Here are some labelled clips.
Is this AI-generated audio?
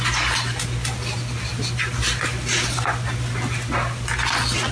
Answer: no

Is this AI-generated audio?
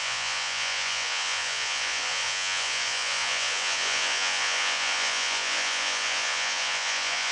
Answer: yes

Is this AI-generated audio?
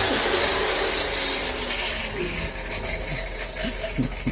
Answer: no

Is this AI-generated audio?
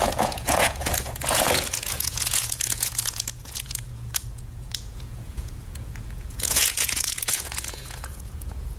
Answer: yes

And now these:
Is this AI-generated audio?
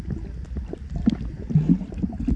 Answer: no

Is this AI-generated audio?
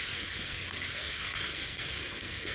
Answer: yes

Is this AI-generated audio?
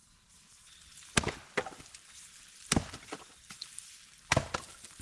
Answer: no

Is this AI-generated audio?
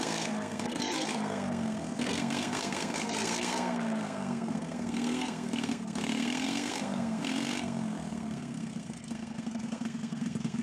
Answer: yes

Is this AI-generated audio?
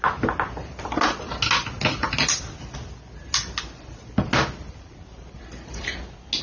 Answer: no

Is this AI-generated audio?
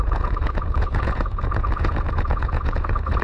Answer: yes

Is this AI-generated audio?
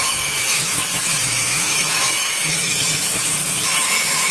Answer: yes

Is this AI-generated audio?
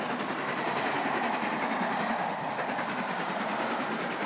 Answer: no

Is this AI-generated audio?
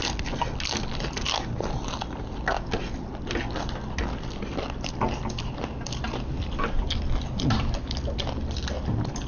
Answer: no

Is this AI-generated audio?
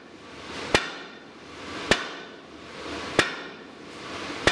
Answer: yes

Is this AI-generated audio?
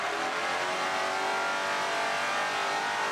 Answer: no